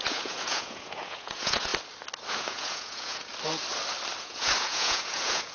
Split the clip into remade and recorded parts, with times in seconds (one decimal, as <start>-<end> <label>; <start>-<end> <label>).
0.0-1.7 remade; 1.7-2.3 recorded; 2.3-3.3 remade; 3.3-4.2 recorded; 4.2-5.5 remade